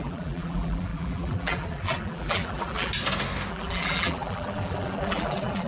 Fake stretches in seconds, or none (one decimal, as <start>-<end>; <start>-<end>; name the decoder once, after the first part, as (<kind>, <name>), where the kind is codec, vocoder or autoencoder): 0.0-2.9 (vocoder, BigVGAN v2); 3.5-5.7